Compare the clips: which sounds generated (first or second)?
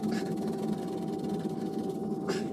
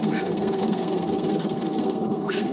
second